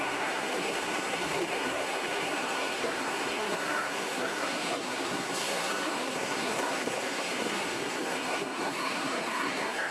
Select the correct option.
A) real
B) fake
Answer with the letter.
B